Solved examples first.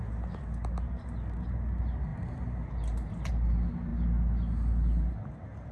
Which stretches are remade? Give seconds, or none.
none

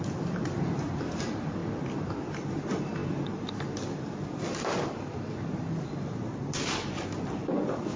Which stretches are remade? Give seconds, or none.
0.0-1.6 (vocoder, BigVGAN v2); 2.5-8.0

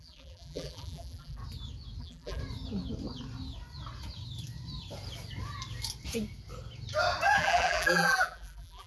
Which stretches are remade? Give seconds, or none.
0.0-1.4 (vocoder, BigVGAN v2); 2.0-2.4; 7.4-8.9

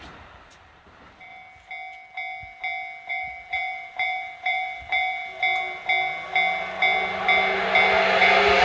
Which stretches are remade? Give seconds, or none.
0.0-1.3 (vocoder, BigVGAN v2); 3.1-5.2

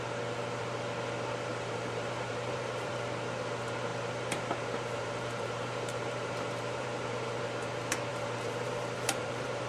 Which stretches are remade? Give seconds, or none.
1.5-3.0 (vocoder, BigVGAN v2); 3.9-7.4; 8.1-9.7

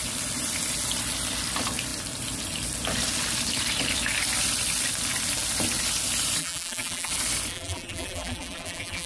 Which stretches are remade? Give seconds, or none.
6.4-7.1 (vocoder, BigVGAN v2); 7.5-9.1